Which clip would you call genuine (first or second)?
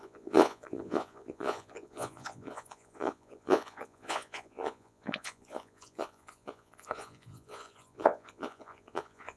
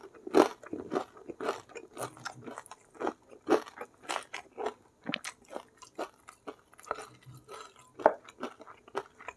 second